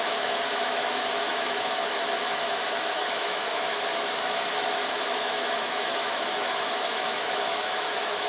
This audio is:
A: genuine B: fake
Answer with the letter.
B